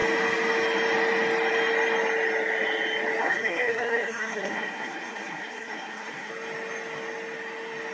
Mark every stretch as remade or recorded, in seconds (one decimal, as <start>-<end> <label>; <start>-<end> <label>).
0.0-3.2 recorded; 3.2-6.3 remade; 6.3-7.9 recorded